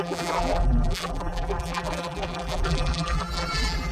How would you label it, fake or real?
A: fake